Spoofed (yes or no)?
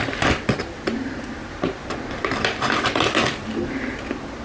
no